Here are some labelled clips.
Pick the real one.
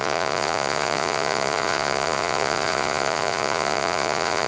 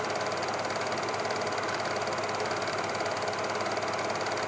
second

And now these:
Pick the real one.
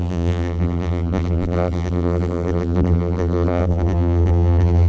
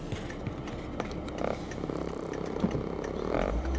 second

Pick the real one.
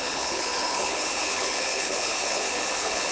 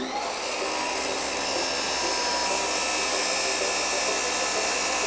second